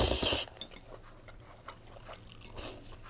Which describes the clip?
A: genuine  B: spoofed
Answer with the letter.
A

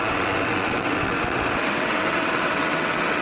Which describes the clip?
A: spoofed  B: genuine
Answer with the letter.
A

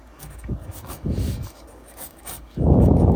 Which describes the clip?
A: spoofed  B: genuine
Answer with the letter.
A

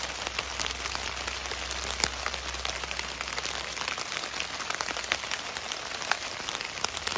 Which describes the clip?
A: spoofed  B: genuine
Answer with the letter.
B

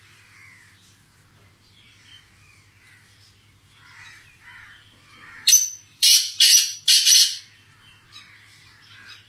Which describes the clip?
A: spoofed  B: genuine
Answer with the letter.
A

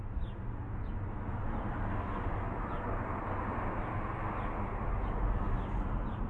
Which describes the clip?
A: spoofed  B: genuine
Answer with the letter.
B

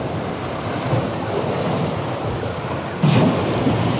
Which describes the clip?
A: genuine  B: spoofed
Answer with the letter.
A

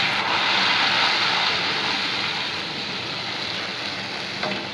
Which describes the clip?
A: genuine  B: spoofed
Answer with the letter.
A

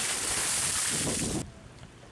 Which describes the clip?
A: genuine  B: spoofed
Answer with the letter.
A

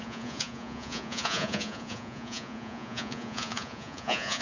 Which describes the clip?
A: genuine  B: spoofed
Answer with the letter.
B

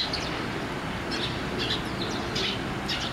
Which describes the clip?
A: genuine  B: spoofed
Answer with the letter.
A